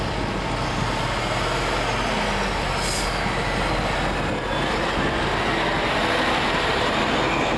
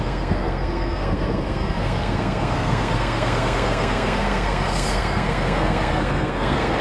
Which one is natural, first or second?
first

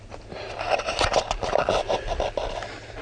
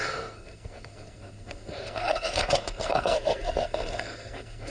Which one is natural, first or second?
first